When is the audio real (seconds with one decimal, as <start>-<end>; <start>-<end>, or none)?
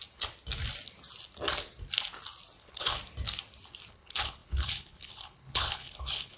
0.0-2.6; 3.0-3.9